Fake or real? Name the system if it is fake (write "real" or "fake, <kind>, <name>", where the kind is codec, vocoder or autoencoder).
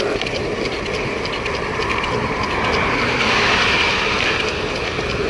real